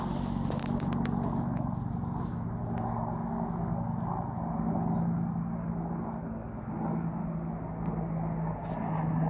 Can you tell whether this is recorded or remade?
recorded